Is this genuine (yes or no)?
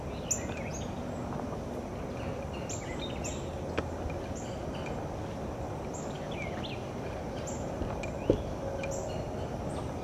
yes